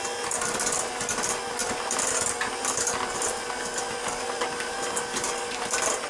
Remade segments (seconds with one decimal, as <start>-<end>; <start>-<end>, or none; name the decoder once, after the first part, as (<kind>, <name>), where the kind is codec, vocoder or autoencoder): none